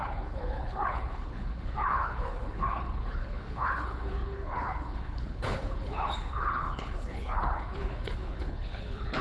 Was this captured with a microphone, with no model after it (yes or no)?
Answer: no